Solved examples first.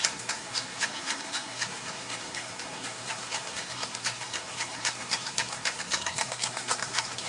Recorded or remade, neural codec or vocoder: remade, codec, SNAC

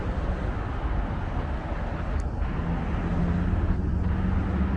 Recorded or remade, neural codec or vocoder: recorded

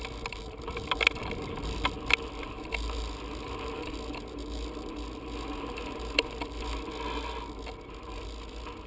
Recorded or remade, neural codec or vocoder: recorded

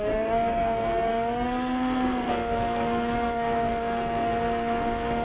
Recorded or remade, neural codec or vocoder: remade, codec, SNAC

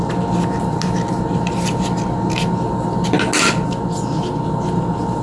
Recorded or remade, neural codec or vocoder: recorded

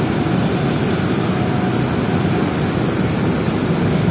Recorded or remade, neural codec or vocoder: recorded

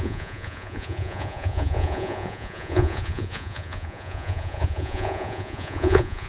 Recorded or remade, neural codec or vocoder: remade, vocoder, Vocos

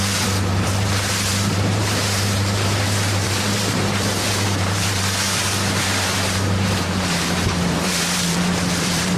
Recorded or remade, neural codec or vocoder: remade, vocoder, BigVGAN v2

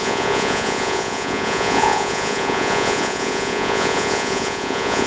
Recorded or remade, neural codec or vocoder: remade, vocoder, Vocos